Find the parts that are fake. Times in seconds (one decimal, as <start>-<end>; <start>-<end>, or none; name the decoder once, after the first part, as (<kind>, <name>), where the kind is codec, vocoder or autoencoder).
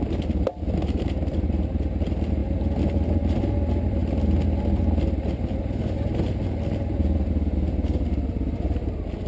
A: none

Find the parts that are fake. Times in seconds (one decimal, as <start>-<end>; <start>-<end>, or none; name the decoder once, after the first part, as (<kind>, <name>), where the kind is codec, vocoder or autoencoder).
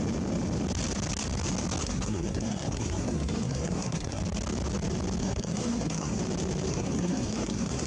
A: 1.8-4.2 (codec, SNAC); 5.2-6.2; 6.7-7.9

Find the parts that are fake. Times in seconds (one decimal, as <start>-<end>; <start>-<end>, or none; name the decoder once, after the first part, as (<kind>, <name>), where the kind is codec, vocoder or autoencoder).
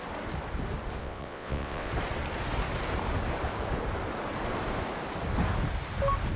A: 1.0-1.9 (vocoder, WaveNeXt)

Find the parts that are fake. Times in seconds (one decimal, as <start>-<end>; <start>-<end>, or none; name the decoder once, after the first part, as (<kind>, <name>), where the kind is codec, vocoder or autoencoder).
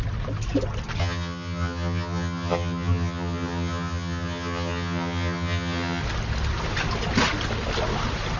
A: 1.0-6.0 (vocoder, HiFi-GAN)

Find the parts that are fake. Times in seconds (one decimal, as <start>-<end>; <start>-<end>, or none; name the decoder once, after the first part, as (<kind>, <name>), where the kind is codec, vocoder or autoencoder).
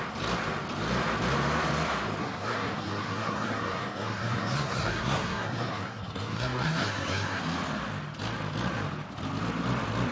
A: 2.2-7.4 (codec, SNAC)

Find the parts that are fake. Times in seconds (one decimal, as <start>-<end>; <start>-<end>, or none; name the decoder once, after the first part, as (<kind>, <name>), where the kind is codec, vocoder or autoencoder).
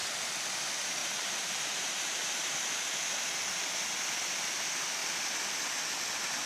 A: 1.0-2.5 (vocoder, BigVGAN v2)